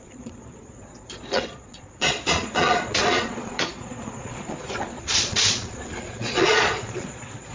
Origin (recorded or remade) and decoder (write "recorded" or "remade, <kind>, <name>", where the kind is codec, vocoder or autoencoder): remade, vocoder, Vocos